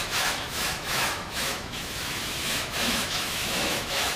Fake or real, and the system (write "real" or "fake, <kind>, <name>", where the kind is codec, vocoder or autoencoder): fake, autoencoder, DAC-VAE